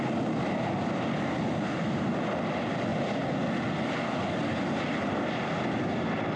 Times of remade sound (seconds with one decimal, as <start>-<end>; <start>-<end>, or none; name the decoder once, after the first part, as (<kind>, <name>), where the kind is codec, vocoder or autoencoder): none